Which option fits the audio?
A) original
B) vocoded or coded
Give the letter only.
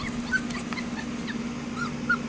A